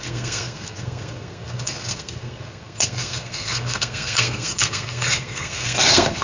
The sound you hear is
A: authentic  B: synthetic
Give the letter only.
B